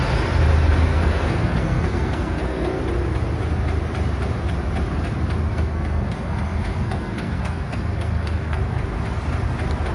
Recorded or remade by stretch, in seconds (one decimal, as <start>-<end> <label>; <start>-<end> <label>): 0.0-0.9 recorded; 0.9-2.8 remade; 2.8-5.5 recorded; 5.5-8.6 remade; 8.6-9.9 recorded